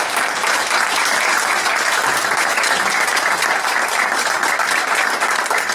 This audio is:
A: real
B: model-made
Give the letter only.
A